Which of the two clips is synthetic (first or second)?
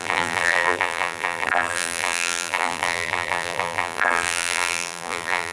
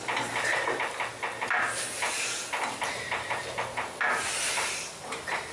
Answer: first